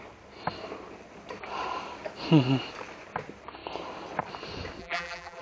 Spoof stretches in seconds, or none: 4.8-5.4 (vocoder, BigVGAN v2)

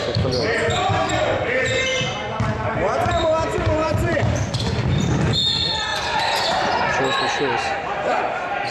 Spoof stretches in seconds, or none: 3.8-4.5 (vocoder, BigVGAN v2); 5.9-6.6

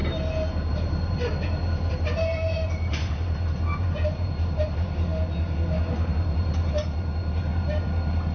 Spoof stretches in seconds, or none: 0.7-1.3 (vocoder, BigVGAN v2); 1.9-5.1; 6.1-8.3

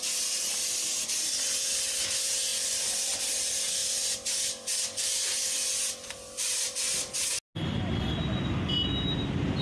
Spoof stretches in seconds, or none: none